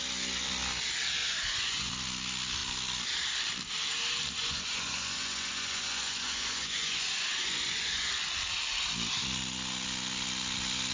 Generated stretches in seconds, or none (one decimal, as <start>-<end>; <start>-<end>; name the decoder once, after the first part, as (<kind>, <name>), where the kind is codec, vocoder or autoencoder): 1.2-1.9 (vocoder, Vocos); 4.4-8.1